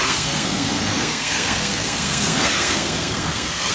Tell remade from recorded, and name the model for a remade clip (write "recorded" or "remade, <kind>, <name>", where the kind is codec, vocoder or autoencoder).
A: remade, codec, SNAC